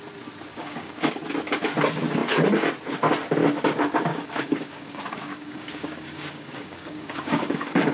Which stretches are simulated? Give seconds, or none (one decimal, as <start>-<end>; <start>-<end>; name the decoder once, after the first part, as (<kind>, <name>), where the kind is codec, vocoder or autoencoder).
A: 0.5-1.1 (codec, DAC); 4.1-7.9